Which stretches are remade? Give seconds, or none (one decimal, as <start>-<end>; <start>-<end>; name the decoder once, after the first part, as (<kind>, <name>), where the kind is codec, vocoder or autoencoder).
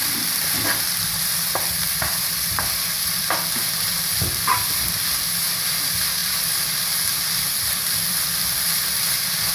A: 0.0-9.5 (vocoder, BigVGAN v2)